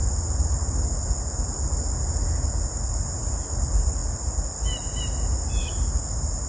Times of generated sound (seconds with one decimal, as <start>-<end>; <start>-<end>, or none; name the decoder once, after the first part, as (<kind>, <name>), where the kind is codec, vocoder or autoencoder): none